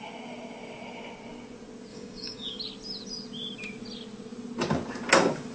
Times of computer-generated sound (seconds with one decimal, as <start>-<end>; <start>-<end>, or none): 1.9-2.6

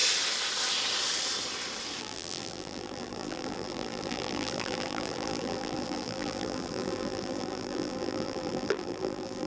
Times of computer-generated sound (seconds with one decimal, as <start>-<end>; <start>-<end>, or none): 2.0-9.5

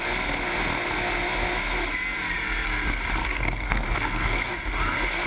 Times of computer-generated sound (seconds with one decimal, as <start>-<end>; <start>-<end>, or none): 3.2-4.5

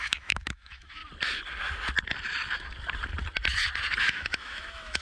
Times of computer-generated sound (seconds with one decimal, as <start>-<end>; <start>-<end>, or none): 0.0-1.0; 4.0-5.0

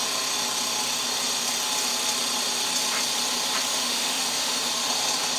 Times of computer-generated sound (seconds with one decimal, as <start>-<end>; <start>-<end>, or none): 3.7-4.7